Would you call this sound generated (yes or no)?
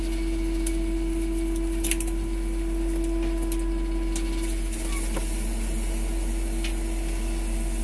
no